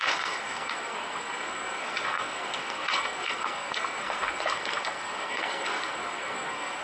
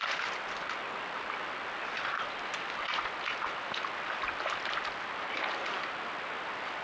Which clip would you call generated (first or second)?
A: first